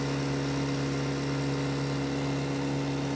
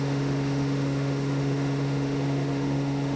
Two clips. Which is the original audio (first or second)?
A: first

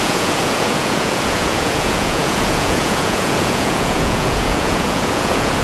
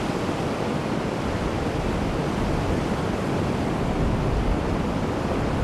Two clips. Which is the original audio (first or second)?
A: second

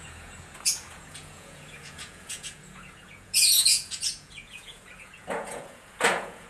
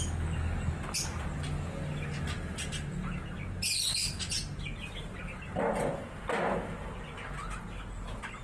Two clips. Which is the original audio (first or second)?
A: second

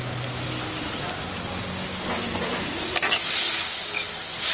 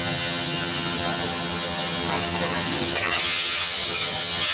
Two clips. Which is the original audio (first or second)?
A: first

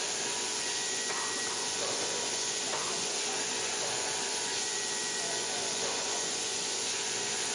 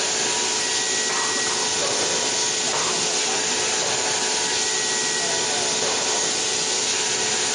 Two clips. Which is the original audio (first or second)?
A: second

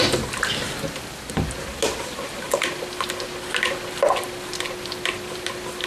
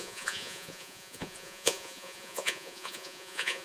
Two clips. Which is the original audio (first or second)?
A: first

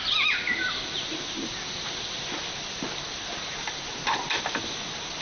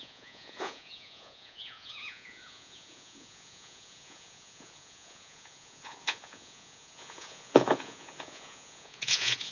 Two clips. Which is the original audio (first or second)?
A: first